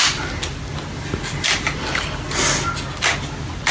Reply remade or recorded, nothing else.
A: recorded